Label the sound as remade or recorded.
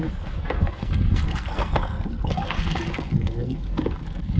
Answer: remade